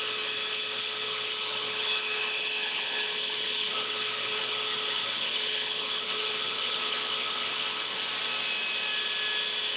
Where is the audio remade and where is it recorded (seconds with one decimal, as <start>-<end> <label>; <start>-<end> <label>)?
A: 0.0-8.0 remade; 8.0-9.8 recorded